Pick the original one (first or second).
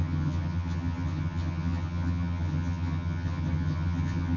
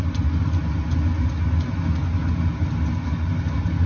second